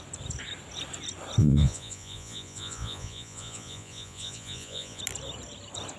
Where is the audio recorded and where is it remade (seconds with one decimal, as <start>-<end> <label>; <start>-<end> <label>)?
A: 0.0-1.4 recorded; 1.4-5.0 remade; 5.0-6.0 recorded